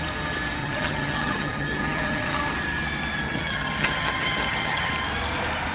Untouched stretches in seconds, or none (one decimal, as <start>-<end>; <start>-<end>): 0.0-0.6; 2.4-3.2; 4.9-5.7

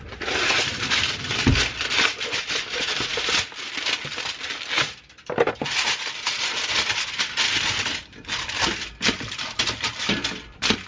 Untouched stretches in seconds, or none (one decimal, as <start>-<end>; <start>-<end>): 0.0-10.9

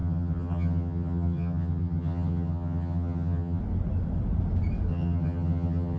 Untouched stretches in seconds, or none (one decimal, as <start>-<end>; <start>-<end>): 3.6-4.9

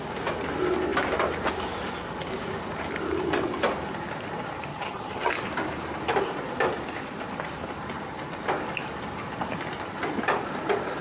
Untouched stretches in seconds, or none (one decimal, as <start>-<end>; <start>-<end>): 0.0-4.7; 5.3-11.0